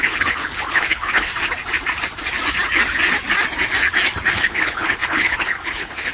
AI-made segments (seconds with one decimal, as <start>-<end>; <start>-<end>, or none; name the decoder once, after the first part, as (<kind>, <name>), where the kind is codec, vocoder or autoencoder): 0.0-1.3 (codec, HILCodec); 4.3-6.1